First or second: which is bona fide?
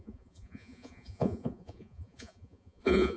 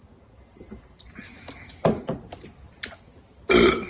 second